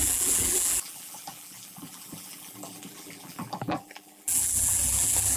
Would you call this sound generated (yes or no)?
yes